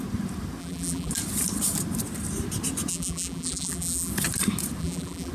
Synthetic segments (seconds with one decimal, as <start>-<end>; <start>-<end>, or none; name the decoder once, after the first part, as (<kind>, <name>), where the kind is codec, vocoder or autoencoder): 0.6-1.1 (vocoder, BigVGAN v2); 2.9-4.1; 4.8-5.3